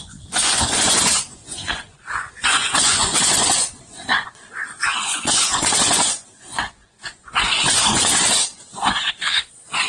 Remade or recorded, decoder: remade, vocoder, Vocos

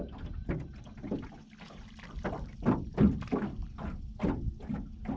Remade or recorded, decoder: recorded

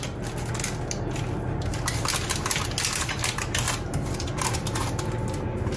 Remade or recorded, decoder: recorded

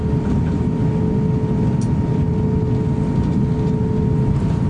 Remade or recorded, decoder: recorded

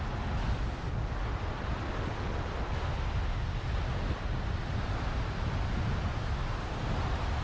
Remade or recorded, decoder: recorded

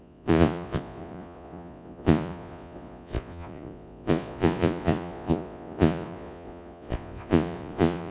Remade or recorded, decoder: remade, vocoder, Vocos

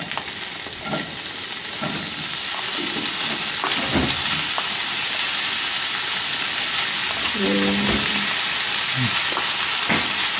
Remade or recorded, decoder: recorded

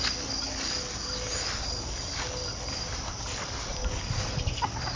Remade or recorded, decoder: recorded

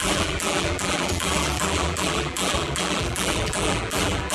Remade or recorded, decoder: remade, vocoder, BigVGAN v2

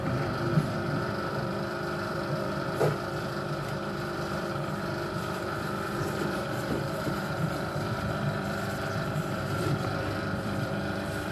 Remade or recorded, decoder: remade, vocoder, BigVGAN v2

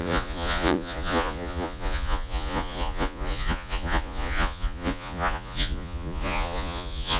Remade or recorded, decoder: remade, vocoder, Vocos